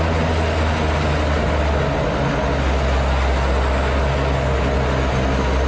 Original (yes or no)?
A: yes